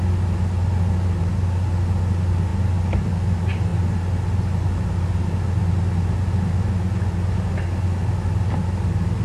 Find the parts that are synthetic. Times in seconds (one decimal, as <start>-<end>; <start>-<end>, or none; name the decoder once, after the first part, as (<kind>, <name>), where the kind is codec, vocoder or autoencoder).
none